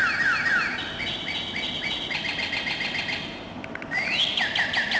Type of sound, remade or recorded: recorded